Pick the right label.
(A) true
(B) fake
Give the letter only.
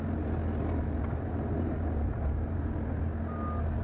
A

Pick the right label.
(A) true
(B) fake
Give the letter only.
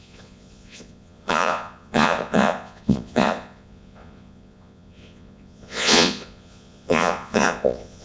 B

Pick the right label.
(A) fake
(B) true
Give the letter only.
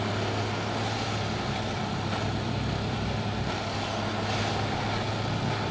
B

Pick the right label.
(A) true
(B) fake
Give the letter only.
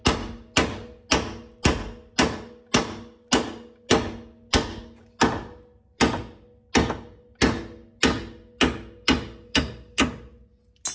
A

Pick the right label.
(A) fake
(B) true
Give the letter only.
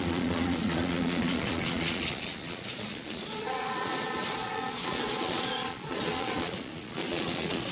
A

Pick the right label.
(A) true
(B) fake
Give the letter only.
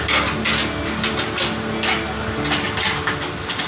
A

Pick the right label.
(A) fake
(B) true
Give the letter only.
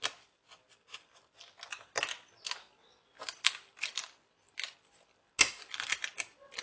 B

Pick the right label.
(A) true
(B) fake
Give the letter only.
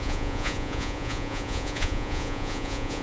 B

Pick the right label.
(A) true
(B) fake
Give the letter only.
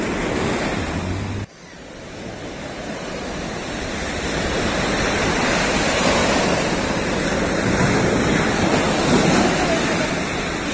A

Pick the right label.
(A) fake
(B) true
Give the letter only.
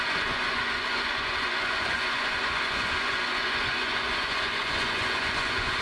A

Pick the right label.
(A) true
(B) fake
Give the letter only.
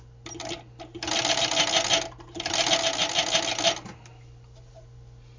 A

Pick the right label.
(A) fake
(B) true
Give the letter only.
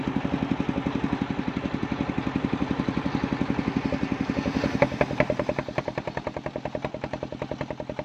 B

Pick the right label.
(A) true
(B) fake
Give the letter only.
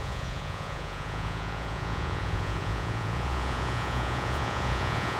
B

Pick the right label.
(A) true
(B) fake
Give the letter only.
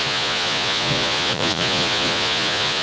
B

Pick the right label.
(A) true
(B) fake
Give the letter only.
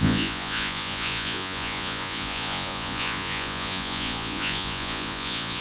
B